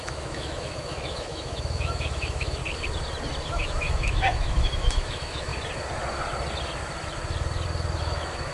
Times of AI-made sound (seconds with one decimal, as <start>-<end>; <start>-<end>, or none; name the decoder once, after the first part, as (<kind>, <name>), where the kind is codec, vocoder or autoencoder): 0.0-2.6 (autoencoder, DAC-VAE); 3.5-5.5; 8.0-8.5